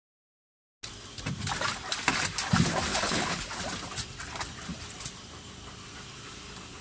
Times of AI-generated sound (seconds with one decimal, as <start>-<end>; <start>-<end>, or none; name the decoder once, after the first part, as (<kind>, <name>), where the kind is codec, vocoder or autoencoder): 2.9-3.4 (codec, HILCodec)